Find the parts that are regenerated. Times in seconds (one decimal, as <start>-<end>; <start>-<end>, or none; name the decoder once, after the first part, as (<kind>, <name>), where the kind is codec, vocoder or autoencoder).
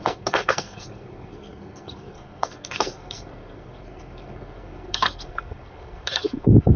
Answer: 0.0-6.8 (codec, SNAC)